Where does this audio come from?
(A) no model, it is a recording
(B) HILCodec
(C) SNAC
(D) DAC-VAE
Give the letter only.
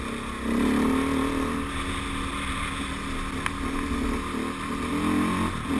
A